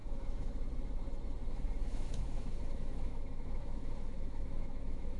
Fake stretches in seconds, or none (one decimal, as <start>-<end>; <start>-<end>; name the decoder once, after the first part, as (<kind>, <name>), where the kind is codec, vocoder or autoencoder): 0.0-0.5 (autoencoder, DAC-VAE); 1.9-5.2